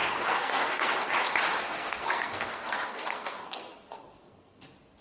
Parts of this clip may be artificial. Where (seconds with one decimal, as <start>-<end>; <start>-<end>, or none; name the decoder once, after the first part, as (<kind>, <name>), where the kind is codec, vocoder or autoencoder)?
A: 0.0-1.1 (codec, SNAC); 1.6-4.6